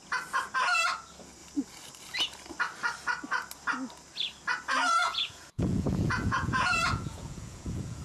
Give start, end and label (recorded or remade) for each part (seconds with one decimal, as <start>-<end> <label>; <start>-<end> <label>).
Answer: 0.0-5.0 recorded; 5.0-8.0 remade